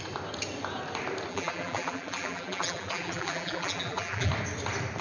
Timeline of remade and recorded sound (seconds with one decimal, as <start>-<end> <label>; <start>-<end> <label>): 0.0-1.3 recorded; 1.3-4.3 remade; 4.3-5.0 recorded